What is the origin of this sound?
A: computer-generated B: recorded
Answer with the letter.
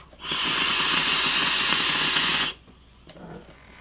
A